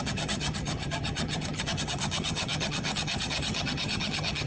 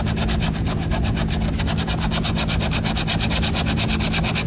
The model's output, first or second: first